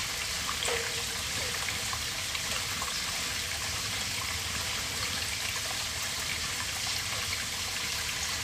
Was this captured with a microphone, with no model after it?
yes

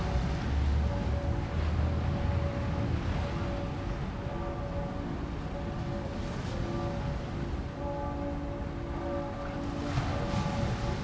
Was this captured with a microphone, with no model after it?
yes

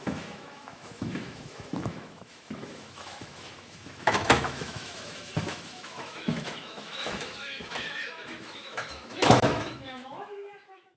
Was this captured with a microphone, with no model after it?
no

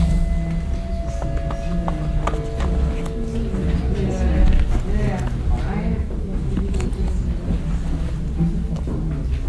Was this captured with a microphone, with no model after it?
yes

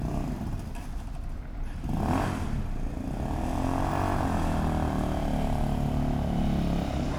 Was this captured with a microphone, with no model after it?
yes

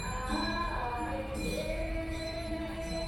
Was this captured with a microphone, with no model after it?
no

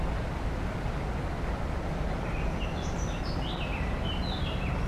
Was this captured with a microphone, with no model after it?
yes